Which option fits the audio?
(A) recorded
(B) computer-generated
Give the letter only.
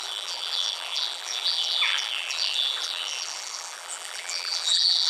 B